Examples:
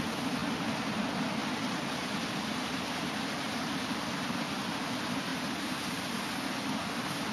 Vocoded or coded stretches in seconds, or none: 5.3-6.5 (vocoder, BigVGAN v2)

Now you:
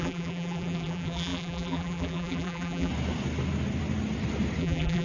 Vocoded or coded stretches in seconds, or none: 0.0-2.9 (vocoder, BigVGAN v2); 4.6-5.0

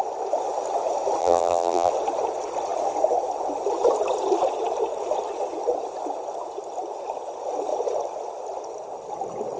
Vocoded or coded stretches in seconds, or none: 1.2-1.9 (vocoder, BigVGAN v2)

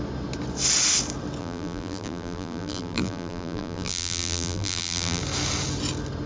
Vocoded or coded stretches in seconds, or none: 1.4-5.2 (vocoder, BigVGAN v2)